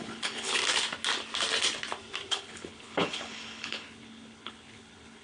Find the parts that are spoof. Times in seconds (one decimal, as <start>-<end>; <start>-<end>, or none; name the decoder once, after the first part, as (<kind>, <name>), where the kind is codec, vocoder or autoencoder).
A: 0.0-0.6 (codec, HILCodec); 2.3-5.2